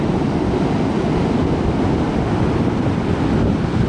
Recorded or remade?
recorded